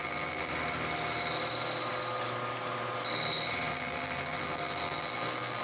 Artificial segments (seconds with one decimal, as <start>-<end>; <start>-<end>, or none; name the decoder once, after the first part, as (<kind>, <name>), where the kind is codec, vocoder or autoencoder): 0.0-0.5 (vocoder, BigVGAN v2); 3.7-5.6